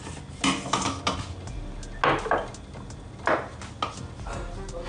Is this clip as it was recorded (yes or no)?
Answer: yes